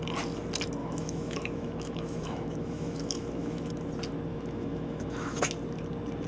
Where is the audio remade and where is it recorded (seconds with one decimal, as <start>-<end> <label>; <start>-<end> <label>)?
0.0-0.8 recorded; 0.8-3.7 remade; 3.7-4.3 recorded; 4.3-5.5 remade; 5.5-6.3 recorded